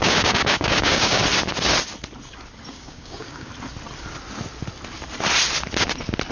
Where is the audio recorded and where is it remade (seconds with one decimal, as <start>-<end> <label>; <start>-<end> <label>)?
0.0-1.2 remade; 1.2-2.7 recorded; 2.7-3.5 remade; 3.5-6.3 recorded

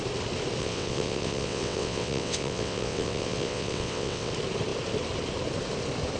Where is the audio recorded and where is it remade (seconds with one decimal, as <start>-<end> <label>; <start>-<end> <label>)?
0.0-0.6 recorded; 0.6-4.3 remade; 4.3-6.2 recorded

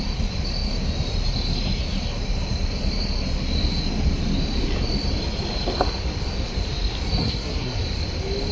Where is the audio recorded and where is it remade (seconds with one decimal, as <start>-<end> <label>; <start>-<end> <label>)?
0.0-7.2 recorded; 7.2-7.8 remade; 7.8-8.5 recorded

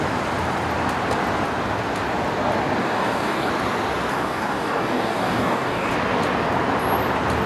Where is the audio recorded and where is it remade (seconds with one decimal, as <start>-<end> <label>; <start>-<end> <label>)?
0.0-2.8 recorded; 2.8-3.5 remade; 3.5-4.1 recorded; 4.1-5.9 remade; 5.9-7.5 recorded

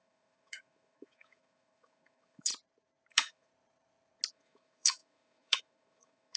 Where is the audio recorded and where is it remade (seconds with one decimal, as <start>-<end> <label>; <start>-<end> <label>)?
0.0-2.5 remade; 2.5-3.1 recorded; 3.1-3.5 remade; 3.5-4.3 recorded; 4.3-6.4 remade